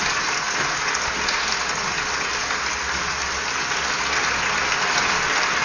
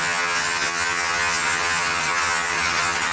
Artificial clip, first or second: second